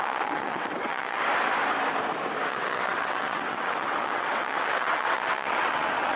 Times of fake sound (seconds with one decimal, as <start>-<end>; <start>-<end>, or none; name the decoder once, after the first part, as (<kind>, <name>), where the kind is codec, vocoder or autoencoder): 0.0-1.2 (vocoder, WaveNeXt); 2.5-6.2